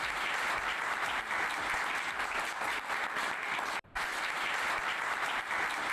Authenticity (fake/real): real